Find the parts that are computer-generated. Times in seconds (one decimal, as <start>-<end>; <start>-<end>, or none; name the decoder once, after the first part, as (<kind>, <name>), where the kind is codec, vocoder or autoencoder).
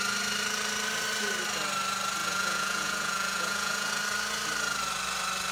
2.2-3.9 (vocoder, Vocos)